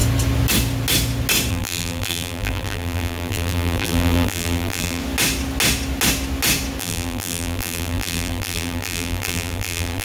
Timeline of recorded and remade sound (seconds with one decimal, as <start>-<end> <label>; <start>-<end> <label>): 0.0-1.5 recorded; 1.5-5.0 remade; 5.0-6.8 recorded; 6.8-10.0 remade